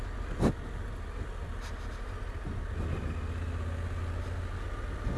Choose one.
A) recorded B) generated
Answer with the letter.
A